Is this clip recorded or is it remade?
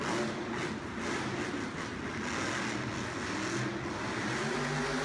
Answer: recorded